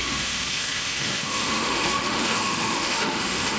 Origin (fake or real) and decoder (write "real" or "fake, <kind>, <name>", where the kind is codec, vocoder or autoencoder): fake, autoencoder, DAC-VAE